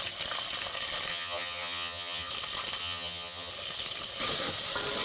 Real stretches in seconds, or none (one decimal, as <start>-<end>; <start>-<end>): 0.0-1.1; 2.3-2.8; 3.5-5.0